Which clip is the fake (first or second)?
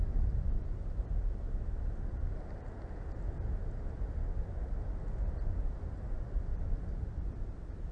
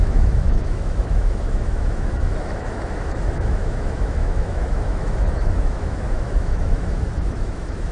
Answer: second